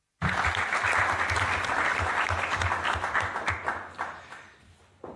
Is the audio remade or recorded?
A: recorded